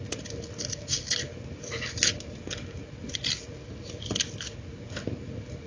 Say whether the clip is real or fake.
real